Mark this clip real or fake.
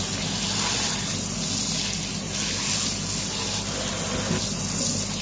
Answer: real